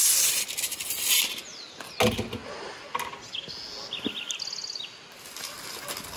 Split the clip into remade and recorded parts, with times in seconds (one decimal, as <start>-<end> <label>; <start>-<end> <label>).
0.0-6.2 recorded